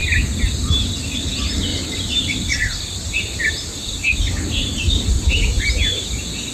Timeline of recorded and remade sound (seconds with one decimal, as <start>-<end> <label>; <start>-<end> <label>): 0.0-1.7 recorded; 1.7-5.6 remade; 5.6-6.5 recorded